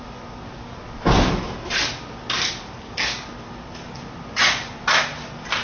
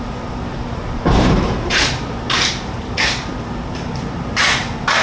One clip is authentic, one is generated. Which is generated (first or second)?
second